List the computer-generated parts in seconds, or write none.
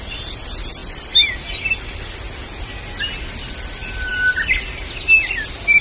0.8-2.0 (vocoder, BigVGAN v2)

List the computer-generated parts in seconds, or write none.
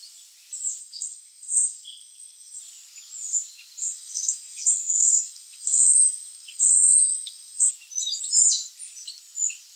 0.8-2.6 (codec, SNAC); 3.8-7.7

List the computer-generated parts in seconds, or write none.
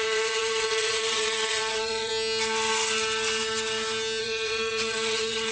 0.0-2.1 (vocoder, WaveNeXt); 4.2-5.5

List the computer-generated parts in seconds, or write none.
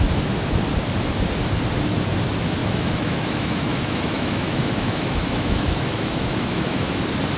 2.6-7.0 (autoencoder, DAC-VAE)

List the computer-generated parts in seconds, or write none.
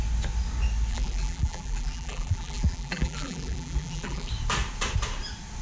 0.9-4.3 (vocoder, BigVGAN v2)